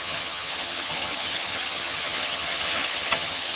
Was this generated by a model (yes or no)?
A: yes